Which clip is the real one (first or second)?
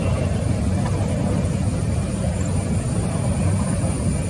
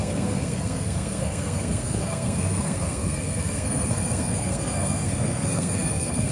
first